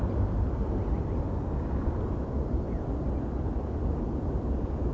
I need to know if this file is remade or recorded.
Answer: recorded